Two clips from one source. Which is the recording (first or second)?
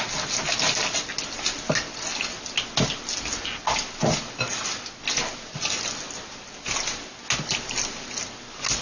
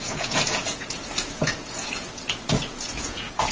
first